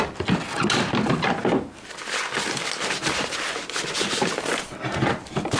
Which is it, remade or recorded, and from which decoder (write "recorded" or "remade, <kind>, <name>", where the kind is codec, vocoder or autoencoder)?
recorded